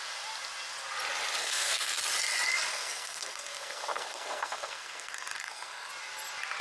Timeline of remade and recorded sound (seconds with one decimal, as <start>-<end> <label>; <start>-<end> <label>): 0.0-1.4 recorded; 1.4-2.0 remade; 2.0-2.7 recorded; 2.7-5.9 remade; 5.9-6.6 recorded